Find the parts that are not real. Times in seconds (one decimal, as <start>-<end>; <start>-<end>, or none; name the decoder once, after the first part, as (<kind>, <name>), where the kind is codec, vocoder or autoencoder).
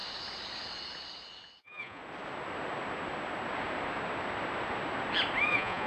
1.6-2.0 (vocoder, Vocos); 5.5-5.9